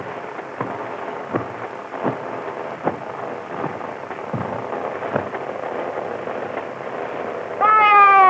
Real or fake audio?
real